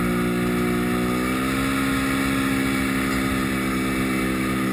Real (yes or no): yes